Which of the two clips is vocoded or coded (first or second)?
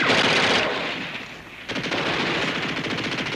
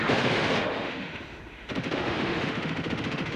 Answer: second